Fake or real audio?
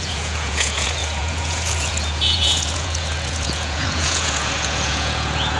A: fake